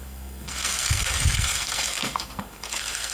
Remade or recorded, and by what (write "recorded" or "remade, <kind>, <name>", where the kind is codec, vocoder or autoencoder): remade, codec, SNAC